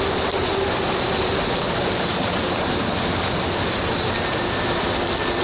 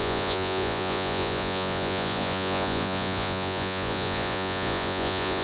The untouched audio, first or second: first